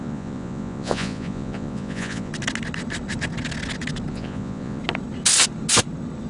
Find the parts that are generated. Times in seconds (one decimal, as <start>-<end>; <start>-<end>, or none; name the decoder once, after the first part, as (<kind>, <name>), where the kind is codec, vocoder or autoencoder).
0.0-2.3 (vocoder, Vocos); 4.1-4.8